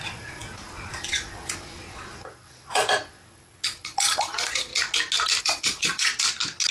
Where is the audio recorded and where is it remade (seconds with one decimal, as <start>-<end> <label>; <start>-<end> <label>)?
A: 0.0-4.7 remade; 4.7-5.4 recorded; 5.4-6.1 remade; 6.1-6.7 recorded